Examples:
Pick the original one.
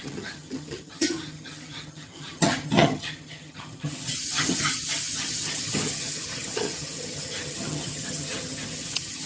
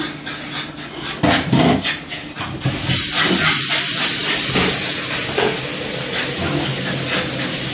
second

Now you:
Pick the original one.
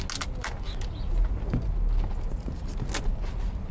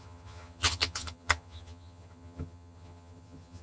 first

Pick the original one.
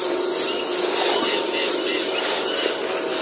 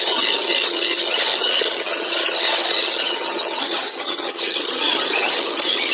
first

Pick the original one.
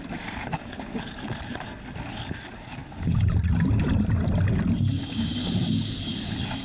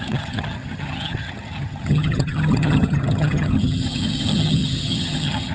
first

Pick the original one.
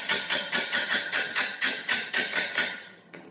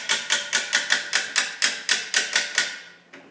second